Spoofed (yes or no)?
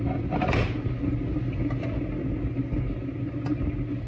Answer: no